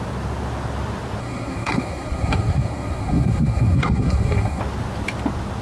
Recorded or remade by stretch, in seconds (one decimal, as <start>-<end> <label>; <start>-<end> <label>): 0.0-1.2 recorded; 1.2-4.6 remade; 4.6-5.6 recorded